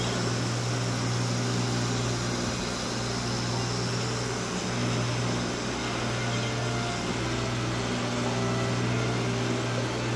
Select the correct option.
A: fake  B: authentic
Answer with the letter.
B